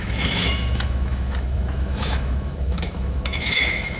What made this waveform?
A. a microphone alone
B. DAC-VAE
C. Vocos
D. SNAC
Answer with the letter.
B